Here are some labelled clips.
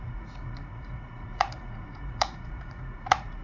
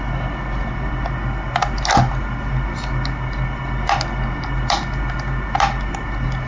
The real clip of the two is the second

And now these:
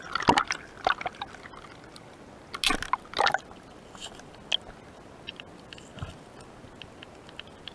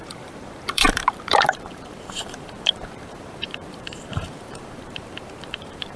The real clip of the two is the first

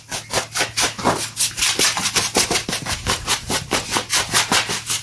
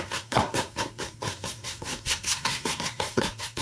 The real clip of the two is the first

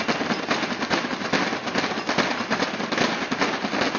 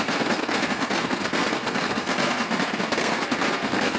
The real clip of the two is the first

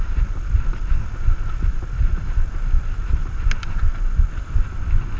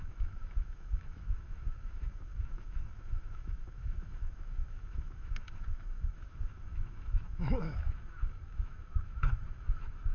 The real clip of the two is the first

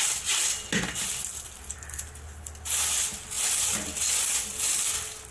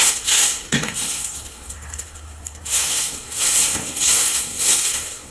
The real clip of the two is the first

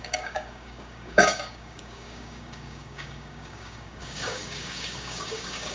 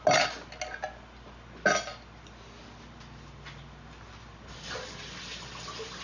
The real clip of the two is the second